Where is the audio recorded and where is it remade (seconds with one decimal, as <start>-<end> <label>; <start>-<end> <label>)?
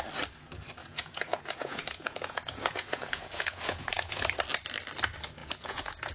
0.0-0.8 recorded; 0.8-4.2 remade; 4.2-5.4 recorded; 5.4-6.1 remade